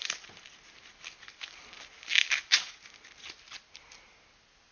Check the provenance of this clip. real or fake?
real